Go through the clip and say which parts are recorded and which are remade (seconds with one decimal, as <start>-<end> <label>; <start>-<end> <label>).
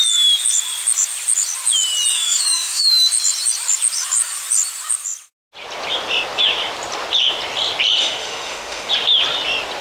0.0-2.1 recorded; 2.1-2.9 remade; 2.9-8.0 recorded; 8.0-8.9 remade; 8.9-9.8 recorded